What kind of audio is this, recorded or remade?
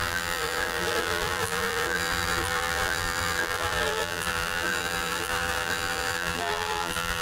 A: remade